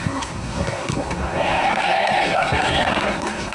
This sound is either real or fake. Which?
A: fake